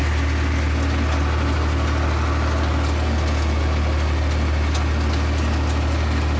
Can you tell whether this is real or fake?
real